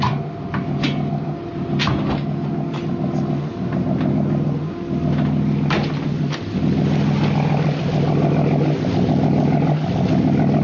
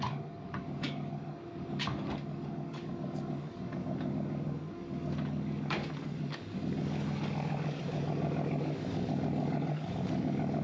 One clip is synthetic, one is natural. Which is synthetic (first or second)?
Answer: second